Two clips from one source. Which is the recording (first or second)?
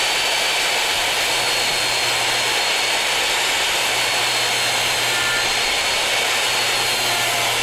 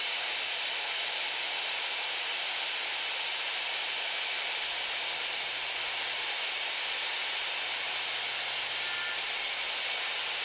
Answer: first